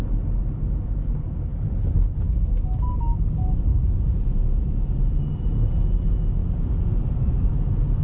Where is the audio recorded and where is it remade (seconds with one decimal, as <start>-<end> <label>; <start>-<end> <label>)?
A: 0.0-3.7 recorded; 3.7-5.7 remade; 5.7-6.4 recorded; 6.4-7.5 remade; 7.5-8.0 recorded